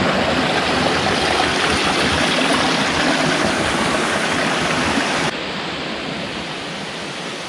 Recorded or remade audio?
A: recorded